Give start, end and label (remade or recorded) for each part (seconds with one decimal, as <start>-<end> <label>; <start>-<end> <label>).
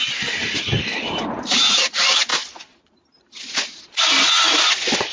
0.0-5.1 recorded